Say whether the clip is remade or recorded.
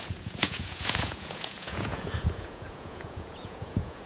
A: remade